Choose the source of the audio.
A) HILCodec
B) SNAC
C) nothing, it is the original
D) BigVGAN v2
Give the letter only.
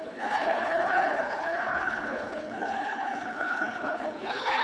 A